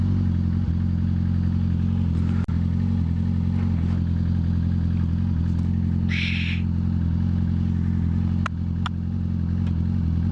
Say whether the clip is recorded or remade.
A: recorded